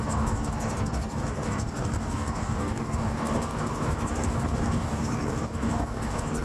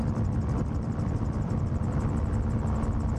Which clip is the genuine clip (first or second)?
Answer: second